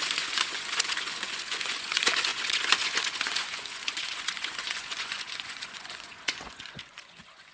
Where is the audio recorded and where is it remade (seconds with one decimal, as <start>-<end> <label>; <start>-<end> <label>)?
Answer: 0.0-7.5 remade